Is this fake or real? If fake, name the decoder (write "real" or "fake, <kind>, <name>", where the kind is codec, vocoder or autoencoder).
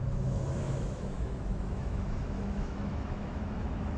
fake, autoencoder, DAC-VAE